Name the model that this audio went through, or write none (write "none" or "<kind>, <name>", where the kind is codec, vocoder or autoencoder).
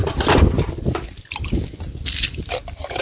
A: none